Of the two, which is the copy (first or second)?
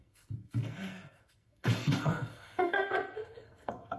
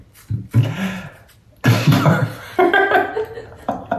first